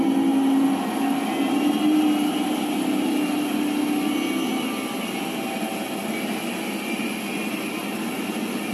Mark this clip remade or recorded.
recorded